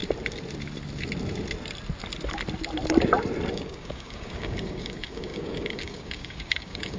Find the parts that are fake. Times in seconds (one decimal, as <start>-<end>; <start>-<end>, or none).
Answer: 3.5-7.0